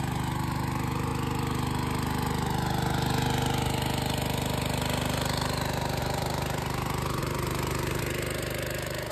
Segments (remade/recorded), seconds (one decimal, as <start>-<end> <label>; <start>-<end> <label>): 0.0-1.1 remade; 1.1-6.0 recorded; 6.0-9.1 remade